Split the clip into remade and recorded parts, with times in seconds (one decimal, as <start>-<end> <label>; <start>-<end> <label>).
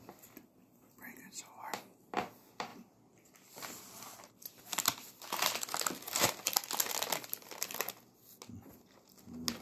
0.0-9.6 recorded